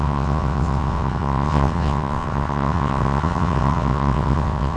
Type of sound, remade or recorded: remade